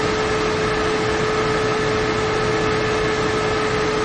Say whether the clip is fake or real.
real